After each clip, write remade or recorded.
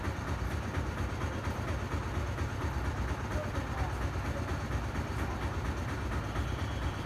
recorded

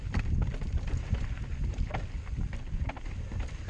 recorded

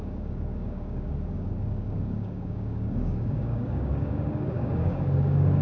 remade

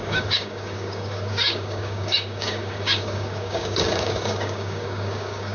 remade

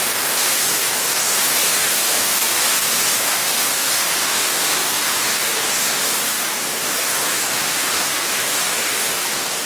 remade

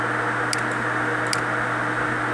recorded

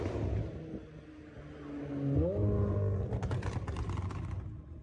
recorded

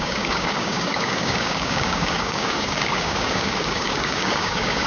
remade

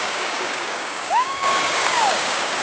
remade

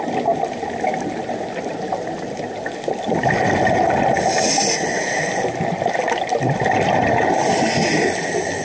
recorded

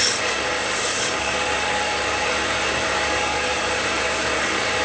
remade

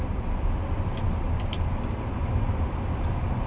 recorded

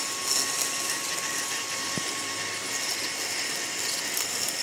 recorded